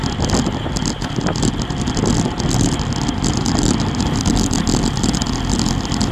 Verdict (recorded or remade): remade